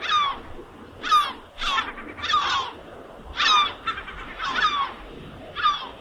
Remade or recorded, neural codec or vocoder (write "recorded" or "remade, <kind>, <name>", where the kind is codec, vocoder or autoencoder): recorded